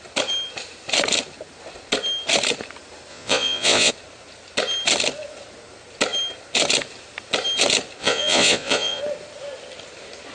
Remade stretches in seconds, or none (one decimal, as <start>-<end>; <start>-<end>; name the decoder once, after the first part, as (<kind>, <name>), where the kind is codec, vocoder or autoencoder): 3.1-3.9 (vocoder, Vocos); 8.0-9.0